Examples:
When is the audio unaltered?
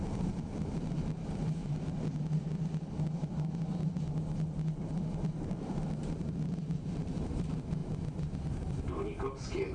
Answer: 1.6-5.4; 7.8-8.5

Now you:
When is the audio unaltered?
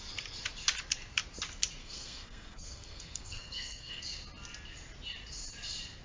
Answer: 0.0-1.8; 4.0-6.0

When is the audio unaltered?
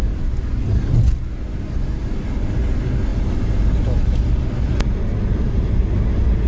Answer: 0.0-3.1; 3.7-5.3; 5.8-6.5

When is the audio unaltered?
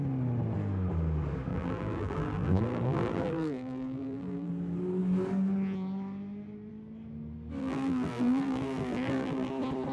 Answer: 0.0-1.5; 4.5-7.6; 9.5-9.9